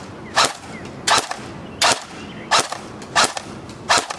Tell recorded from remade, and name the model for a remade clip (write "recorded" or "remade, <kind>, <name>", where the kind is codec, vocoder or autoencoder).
recorded